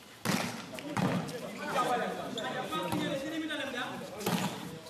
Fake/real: real